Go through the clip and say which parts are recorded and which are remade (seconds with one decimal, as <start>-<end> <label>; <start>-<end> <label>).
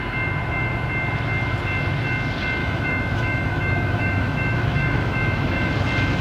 0.0-2.6 recorded; 2.6-5.7 remade; 5.7-6.2 recorded